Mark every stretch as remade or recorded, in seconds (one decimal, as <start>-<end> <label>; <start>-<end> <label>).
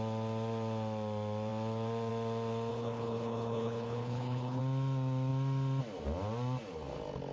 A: 0.0-2.7 recorded; 2.7-4.6 remade; 4.6-7.3 recorded